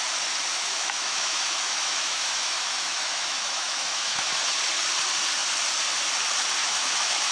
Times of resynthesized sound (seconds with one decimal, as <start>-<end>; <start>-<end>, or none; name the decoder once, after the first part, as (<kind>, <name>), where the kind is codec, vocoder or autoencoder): 0.5-4.4 (autoencoder, DAC-VAE); 6.6-7.3

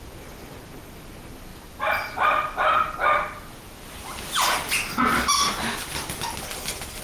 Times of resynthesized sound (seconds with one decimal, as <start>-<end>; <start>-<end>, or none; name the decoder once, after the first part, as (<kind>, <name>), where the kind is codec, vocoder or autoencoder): none

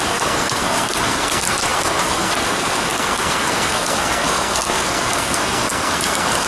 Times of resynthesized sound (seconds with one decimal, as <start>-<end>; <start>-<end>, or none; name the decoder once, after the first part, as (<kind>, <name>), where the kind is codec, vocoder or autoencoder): 0.0-6.5 (codec, SNAC)

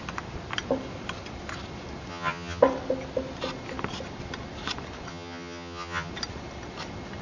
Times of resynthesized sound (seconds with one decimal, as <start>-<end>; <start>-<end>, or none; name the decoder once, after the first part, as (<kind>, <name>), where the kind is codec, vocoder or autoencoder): 2.1-2.6 (vocoder, HiFi-GAN); 5.1-6.1

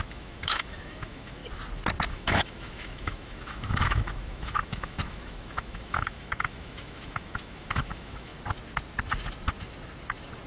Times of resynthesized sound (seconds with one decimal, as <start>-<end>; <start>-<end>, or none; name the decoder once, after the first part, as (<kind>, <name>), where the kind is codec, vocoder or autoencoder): 0.0-1.4 (autoencoder, DAC-VAE); 2.1-8.3

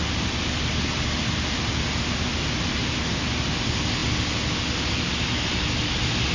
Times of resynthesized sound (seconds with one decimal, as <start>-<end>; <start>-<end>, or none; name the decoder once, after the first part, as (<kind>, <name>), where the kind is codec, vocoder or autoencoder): none

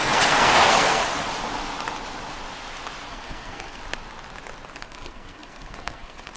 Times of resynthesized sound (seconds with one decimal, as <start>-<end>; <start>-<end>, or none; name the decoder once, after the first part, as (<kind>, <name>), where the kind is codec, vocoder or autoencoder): 0.0-1.0 (codec, SNAC); 3.1-3.8; 4.8-6.4

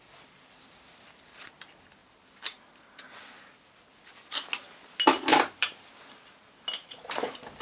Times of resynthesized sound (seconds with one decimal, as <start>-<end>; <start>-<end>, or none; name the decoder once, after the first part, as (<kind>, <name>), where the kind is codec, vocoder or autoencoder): 5.3-6.5 (vocoder, BigVGAN v2)